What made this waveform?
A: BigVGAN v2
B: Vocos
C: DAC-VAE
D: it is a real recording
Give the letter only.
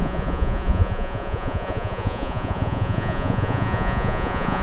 B